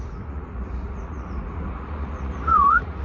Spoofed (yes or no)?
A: yes